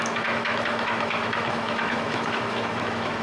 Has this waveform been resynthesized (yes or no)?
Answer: yes